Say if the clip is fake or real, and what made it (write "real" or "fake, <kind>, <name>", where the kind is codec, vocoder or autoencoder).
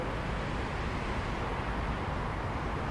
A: real